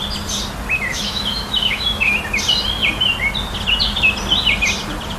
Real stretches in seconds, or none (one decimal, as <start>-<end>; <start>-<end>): 0.0-0.9; 2.2-5.2